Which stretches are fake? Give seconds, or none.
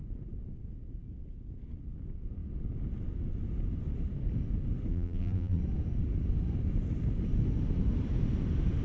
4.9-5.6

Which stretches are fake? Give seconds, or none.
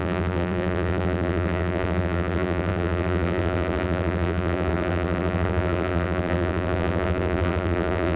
0.0-8.2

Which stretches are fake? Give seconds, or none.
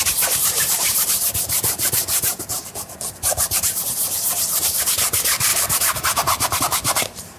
0.0-7.4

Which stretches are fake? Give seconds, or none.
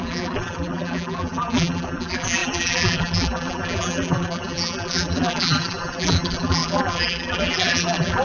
0.0-8.2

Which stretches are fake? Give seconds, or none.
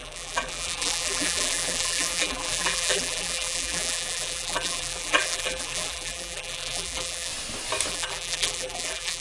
0.0-7.3; 7.9-9.2